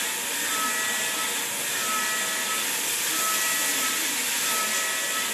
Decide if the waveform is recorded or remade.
recorded